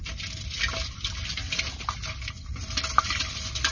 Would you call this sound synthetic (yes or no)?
yes